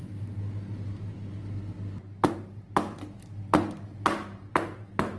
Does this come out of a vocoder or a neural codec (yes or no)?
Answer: no